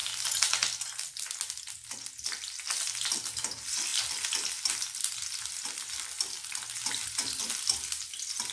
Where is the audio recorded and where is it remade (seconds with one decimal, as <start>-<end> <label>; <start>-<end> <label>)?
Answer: 0.0-8.5 recorded